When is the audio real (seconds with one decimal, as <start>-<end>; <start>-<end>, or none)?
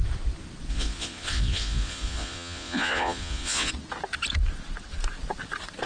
0.0-0.7; 3.7-5.9